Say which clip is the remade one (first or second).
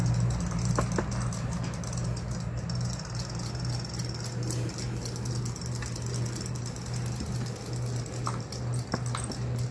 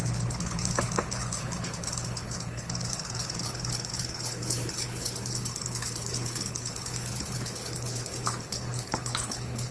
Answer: second